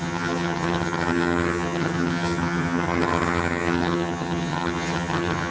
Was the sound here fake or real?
fake